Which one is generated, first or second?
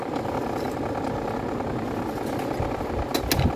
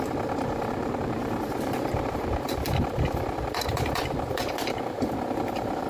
second